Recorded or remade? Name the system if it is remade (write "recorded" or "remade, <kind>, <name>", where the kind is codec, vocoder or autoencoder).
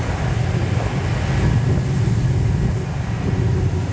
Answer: recorded